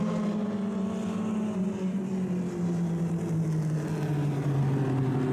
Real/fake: real